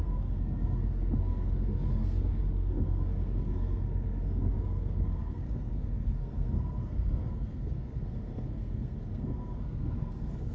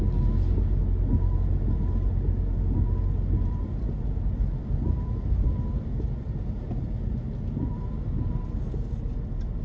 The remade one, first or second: first